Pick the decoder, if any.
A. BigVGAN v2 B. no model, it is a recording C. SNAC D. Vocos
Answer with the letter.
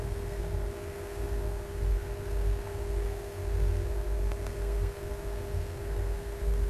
C